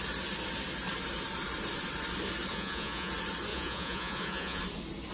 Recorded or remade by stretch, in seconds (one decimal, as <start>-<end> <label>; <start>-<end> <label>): 0.0-2.5 recorded; 2.5-3.1 remade; 3.1-3.5 recorded; 3.5-4.6 remade; 4.6-5.1 recorded